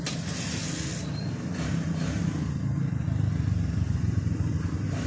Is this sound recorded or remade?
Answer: recorded